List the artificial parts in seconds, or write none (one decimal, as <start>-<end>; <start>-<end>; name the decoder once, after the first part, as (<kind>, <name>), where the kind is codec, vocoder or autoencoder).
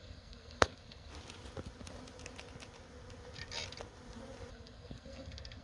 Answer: 0.0-1.1 (codec, SNAC); 4.5-5.6